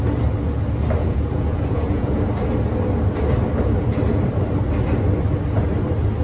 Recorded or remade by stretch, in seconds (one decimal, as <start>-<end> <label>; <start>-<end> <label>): 0.0-1.0 recorded; 1.0-2.2 remade; 2.2-6.2 recorded